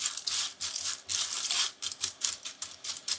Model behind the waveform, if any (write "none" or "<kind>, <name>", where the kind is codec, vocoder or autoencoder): none